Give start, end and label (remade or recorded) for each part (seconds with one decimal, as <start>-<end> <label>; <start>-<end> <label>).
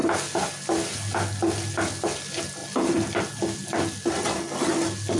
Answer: 0.0-5.2 recorded